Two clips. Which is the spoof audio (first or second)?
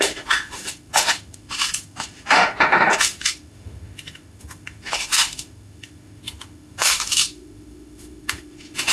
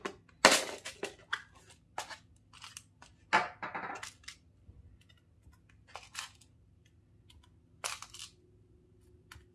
first